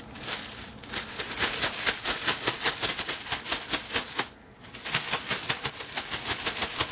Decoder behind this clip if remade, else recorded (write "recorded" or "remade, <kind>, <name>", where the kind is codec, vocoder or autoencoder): recorded